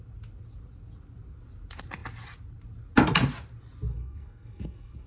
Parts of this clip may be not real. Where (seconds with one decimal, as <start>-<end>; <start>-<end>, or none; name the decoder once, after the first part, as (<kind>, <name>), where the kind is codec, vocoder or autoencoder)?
3.9-5.1 (codec, SNAC)